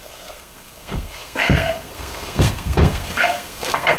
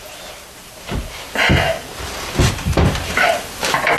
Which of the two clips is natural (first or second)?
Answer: second